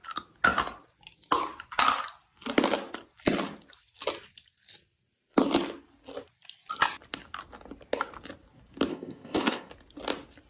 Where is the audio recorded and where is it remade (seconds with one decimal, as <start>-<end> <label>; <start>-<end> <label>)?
0.0-8.9 recorded; 8.9-9.7 remade; 9.7-10.5 recorded